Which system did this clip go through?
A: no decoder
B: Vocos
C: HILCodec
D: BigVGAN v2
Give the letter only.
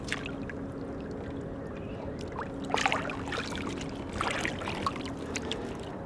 A